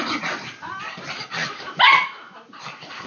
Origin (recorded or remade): recorded